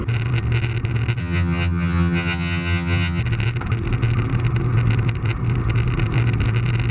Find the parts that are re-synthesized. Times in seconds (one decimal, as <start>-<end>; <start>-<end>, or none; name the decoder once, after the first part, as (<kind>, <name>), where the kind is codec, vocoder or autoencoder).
1.2-3.2 (vocoder, HiFi-GAN)